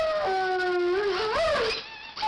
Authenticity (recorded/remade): recorded